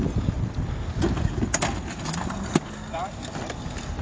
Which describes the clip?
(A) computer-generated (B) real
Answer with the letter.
B